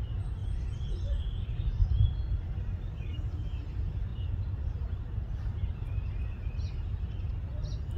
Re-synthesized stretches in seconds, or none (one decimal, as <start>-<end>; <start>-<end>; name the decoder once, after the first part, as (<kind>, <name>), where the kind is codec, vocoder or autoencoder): 1.8-2.4 (vocoder, BigVGAN v2); 4.1-6.1; 6.9-8.0